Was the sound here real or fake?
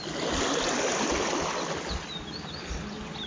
real